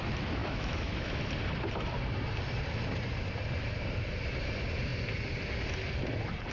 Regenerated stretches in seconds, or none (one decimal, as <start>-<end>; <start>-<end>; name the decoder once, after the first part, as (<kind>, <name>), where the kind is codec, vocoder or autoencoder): 0.4-1.2 (autoencoder, DAC-VAE)